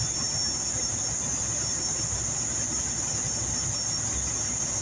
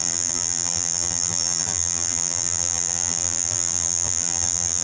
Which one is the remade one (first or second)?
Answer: second